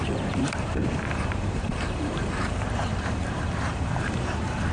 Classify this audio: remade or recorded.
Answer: remade